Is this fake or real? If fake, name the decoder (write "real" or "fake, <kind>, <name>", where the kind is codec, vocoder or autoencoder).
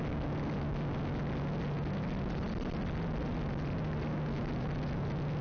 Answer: real